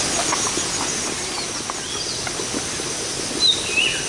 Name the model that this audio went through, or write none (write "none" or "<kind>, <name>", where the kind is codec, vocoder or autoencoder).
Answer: none